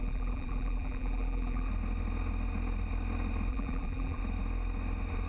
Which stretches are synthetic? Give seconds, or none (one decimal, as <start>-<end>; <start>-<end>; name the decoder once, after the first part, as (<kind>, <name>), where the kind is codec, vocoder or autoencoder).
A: 0.0-1.7 (vocoder, BigVGAN v2); 3.5-4.2

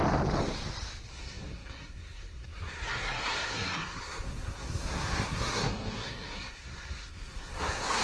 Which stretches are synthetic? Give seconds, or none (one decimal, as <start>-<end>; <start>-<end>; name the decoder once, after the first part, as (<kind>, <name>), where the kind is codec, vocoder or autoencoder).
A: 1.1-8.0 (codec, SNAC)

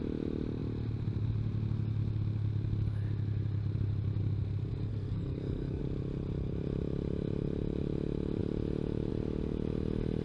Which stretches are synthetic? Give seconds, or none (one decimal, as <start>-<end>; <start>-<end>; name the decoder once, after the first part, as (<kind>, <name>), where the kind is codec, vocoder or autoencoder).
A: 4.9-5.8 (codec, SNAC)

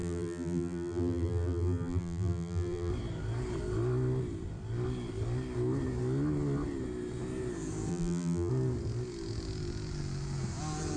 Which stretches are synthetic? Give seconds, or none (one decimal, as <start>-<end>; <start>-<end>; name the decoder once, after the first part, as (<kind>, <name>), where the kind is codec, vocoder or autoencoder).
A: 0.0-2.9 (vocoder, BigVGAN v2); 7.9-8.5

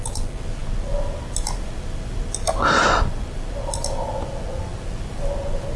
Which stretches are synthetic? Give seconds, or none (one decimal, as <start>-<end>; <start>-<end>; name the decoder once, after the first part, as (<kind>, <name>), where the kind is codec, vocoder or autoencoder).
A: none